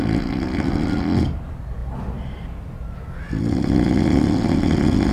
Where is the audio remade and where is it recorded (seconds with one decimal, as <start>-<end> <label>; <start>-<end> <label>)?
0.0-5.1 recorded